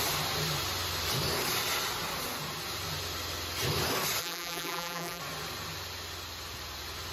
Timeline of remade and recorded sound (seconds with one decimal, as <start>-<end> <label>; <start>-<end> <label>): 0.0-4.2 recorded; 4.2-5.2 remade; 5.2-7.1 recorded